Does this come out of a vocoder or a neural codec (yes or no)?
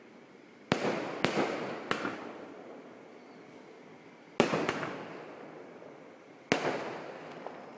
no